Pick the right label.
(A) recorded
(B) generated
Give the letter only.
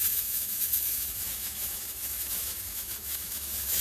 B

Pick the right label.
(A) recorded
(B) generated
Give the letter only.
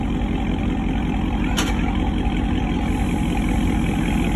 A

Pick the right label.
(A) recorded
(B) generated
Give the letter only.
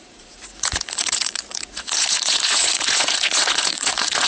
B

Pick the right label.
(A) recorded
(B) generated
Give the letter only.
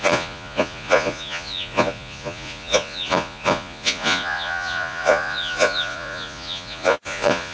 B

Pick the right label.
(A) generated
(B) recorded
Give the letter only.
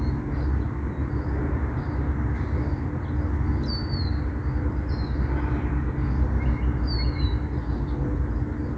B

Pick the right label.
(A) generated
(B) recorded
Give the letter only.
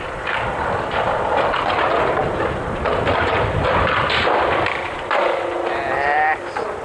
A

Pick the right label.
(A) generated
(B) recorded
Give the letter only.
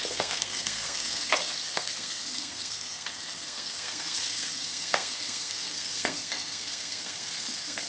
A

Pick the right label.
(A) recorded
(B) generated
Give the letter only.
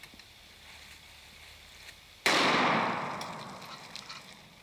A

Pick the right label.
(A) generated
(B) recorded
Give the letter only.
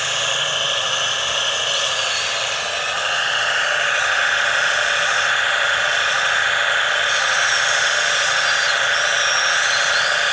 B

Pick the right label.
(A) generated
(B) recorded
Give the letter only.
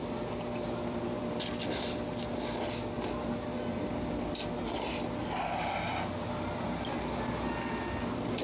B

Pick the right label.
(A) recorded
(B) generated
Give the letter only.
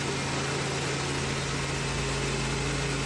A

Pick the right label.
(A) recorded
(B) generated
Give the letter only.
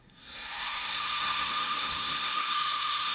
B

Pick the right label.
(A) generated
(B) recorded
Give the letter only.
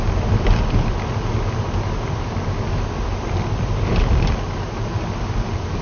B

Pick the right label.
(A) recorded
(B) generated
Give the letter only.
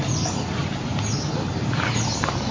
A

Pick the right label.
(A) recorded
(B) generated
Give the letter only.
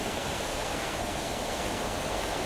B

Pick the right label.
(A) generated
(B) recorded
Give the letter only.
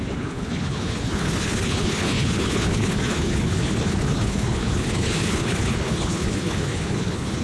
A